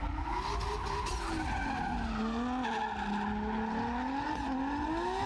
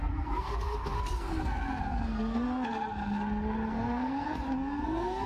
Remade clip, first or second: second